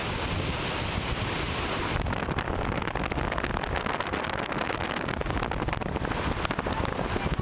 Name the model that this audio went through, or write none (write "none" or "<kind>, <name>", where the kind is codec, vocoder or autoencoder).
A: none